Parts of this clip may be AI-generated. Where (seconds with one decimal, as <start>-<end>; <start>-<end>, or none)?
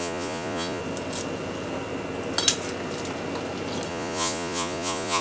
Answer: 0.0-0.8; 3.9-5.2